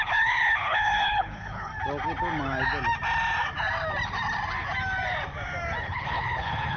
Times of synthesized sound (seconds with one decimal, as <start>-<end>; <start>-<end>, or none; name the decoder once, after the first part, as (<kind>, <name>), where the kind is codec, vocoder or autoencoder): 0.0-1.7 (codec, HILCodec); 5.8-6.8